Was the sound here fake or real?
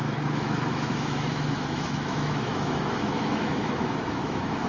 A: fake